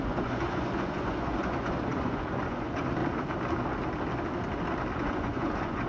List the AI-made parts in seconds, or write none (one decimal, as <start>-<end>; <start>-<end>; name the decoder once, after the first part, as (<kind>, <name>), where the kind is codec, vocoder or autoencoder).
0.0-3.0 (vocoder, Vocos); 4.9-5.9